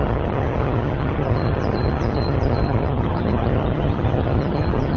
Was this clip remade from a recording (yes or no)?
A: yes